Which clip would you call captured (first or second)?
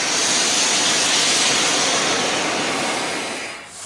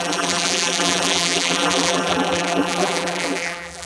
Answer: first